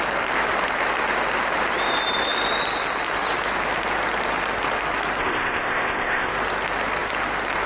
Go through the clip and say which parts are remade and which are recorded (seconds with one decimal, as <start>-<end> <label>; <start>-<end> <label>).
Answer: 0.0-5.2 recorded; 5.2-6.3 remade; 6.3-7.7 recorded